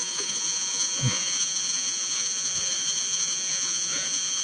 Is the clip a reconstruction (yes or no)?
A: yes